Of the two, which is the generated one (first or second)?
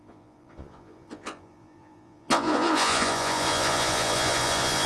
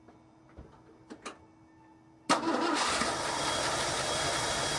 first